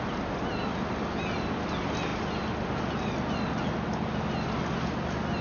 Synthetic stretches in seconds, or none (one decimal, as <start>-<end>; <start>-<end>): none